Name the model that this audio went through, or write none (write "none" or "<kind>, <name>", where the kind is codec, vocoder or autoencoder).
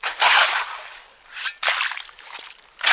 none